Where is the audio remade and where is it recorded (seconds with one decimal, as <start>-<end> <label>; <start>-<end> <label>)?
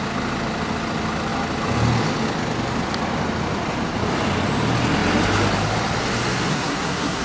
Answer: 0.0-6.5 recorded; 6.5-7.2 remade